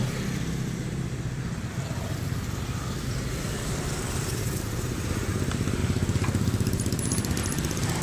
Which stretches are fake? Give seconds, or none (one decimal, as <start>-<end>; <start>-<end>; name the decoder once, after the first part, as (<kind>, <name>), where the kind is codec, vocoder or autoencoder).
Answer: 4.2-5.8 (vocoder, BigVGAN v2); 7.4-8.0